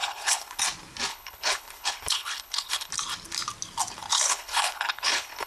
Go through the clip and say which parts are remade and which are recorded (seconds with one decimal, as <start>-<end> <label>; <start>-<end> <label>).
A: 0.0-0.6 remade; 0.6-1.1 recorded; 1.1-2.9 remade; 2.9-4.1 recorded; 4.1-5.5 remade